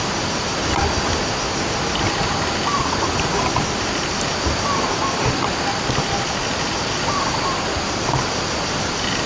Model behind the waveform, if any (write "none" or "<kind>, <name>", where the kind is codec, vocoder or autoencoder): none